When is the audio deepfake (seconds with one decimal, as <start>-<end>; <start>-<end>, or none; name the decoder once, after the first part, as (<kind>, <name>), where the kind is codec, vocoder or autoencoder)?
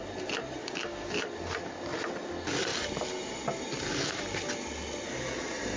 0.6-1.1 (codec, DAC)